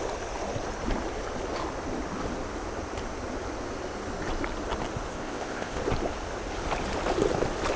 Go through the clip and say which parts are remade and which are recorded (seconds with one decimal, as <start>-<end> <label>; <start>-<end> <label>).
0.0-5.1 recorded; 5.1-5.8 remade; 5.8-7.8 recorded